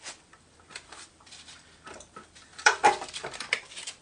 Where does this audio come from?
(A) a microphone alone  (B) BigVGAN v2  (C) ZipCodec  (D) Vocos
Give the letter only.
B